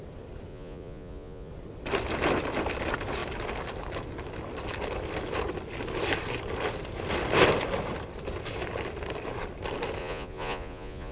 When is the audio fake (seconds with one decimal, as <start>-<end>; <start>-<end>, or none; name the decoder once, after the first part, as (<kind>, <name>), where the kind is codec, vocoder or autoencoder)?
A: 0.5-1.5 (vocoder, Vocos); 10.0-11.1